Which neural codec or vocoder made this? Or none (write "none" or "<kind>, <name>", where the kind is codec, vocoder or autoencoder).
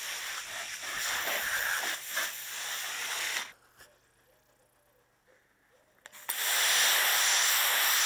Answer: none